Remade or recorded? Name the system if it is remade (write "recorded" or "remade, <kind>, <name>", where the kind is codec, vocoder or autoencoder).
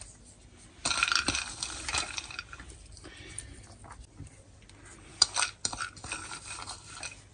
recorded